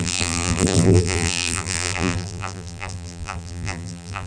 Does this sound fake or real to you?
fake